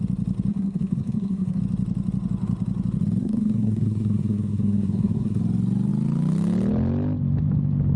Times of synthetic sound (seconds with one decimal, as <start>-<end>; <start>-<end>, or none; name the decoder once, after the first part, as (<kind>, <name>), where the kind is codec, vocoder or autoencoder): 0.5-1.6 (codec, SNAC); 3.2-5.4